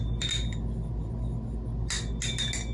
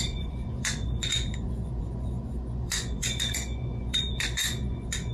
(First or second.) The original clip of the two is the first